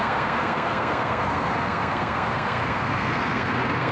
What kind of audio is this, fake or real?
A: fake